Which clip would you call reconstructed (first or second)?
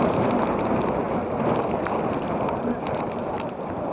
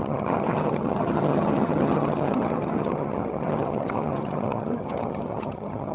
second